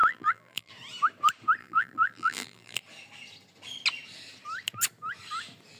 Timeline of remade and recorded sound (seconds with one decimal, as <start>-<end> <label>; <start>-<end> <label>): 0.0-0.7 remade; 0.7-1.6 recorded; 1.6-2.8 remade; 2.8-5.8 recorded